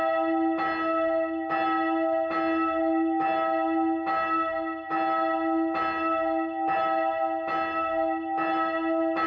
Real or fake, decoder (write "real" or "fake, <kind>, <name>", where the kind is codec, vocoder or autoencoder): real